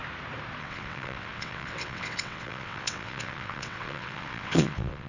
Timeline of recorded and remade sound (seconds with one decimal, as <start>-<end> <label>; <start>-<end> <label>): 0.0-0.6 recorded; 0.6-5.1 remade